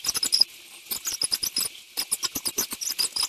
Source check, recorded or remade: recorded